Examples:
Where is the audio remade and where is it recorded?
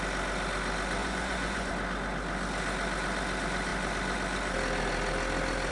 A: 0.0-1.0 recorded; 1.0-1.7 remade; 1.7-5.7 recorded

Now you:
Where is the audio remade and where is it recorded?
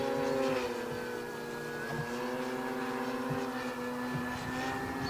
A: 0.0-5.1 recorded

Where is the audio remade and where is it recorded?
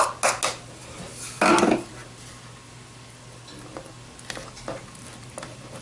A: 0.0-5.8 recorded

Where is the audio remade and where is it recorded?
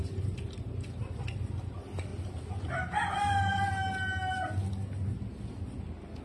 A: 0.0-6.2 recorded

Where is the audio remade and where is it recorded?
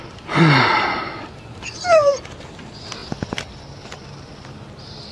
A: 0.0-5.1 recorded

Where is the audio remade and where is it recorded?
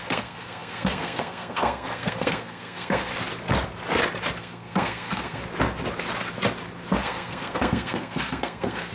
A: 0.0-3.1 remade; 3.1-4.4 recorded; 4.4-5.4 remade; 5.4-7.0 recorded; 7.0-8.9 remade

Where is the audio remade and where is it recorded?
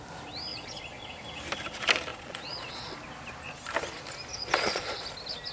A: 0.0-0.5 recorded; 0.5-1.1 remade; 1.1-2.1 recorded; 2.1-2.9 remade; 2.9-4.3 recorded; 4.3-5.0 remade; 5.0-5.5 recorded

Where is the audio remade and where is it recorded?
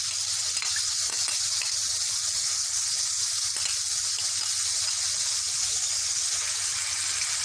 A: 0.0-7.4 recorded